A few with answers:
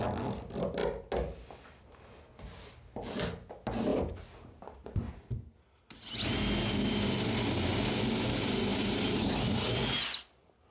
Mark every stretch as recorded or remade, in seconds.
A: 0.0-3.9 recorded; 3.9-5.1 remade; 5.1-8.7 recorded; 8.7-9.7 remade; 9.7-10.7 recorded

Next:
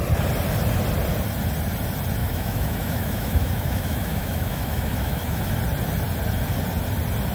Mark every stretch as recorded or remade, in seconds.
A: 0.0-2.2 recorded; 2.2-5.5 remade; 5.5-7.3 recorded

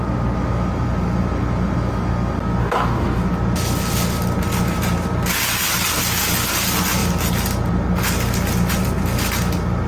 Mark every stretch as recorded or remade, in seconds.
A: 0.0-2.6 recorded; 2.6-3.2 remade; 3.2-9.9 recorded

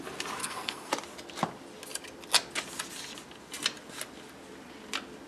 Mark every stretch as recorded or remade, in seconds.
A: 0.0-0.4 recorded; 0.4-0.9 remade; 0.9-5.3 recorded

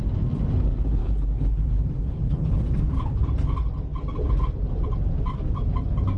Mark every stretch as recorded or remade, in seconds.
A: 0.0-1.0 recorded; 1.0-2.6 remade; 2.6-6.2 recorded

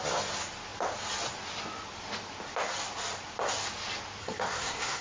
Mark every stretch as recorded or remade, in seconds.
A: 0.0-4.2 recorded; 4.2-5.0 remade

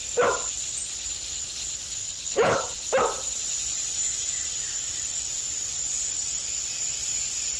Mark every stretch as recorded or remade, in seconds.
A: 0.0-2.0 recorded; 2.0-2.6 remade; 2.6-7.6 recorded